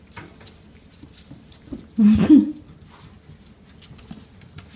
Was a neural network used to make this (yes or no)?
no